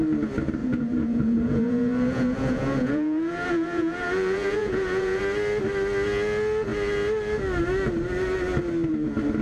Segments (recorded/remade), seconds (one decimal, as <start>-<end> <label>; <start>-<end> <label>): 0.0-0.6 recorded; 0.6-5.2 remade; 5.2-9.4 recorded

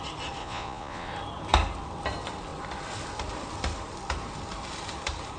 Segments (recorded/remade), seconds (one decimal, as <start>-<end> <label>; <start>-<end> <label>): 0.0-0.4 recorded; 0.4-1.1 remade; 1.1-5.4 recorded

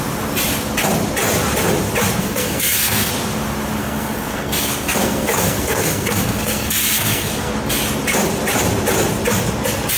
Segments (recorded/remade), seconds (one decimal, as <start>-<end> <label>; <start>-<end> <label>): 0.0-2.2 recorded; 2.2-3.1 remade; 3.1-3.8 recorded; 3.8-7.5 remade; 7.5-10.0 recorded